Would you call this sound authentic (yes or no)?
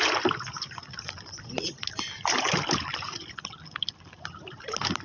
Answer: yes